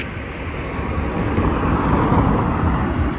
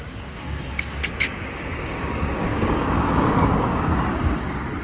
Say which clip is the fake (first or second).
second